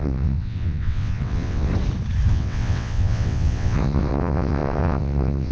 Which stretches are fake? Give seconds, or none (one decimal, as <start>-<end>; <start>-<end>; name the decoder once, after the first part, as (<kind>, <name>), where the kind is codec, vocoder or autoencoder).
0.0-1.7 (vocoder, WaveNeXt); 2.3-5.5